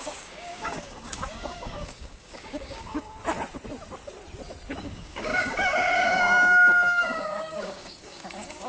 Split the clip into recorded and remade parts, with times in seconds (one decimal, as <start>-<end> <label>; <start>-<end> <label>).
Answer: 0.0-3.2 remade; 3.2-4.8 recorded; 4.8-8.7 remade